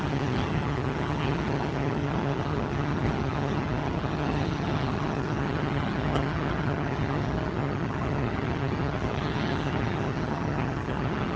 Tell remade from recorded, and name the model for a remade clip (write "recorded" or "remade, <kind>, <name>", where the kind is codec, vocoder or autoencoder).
remade, vocoder, HiFi-GAN